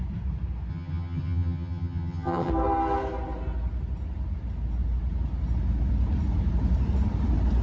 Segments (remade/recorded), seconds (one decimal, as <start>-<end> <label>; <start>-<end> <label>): 0.0-0.7 recorded; 0.7-2.5 remade; 2.5-7.6 recorded